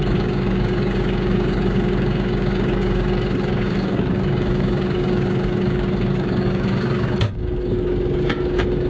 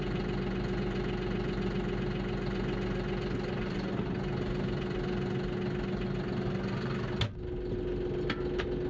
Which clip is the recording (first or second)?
second